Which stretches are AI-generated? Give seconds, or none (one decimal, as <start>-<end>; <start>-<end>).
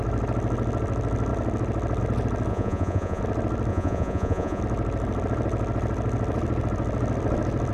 2.5-3.2; 3.7-4.6